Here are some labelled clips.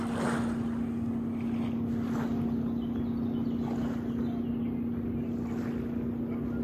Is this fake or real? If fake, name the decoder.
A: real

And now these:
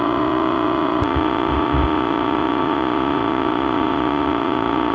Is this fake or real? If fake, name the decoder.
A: fake, vocoder, Vocos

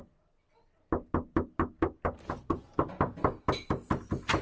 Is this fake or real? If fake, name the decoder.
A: real